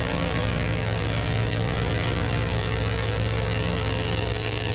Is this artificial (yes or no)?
yes